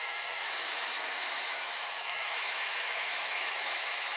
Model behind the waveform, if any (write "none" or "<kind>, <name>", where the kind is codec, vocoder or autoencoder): autoencoder, DAC-VAE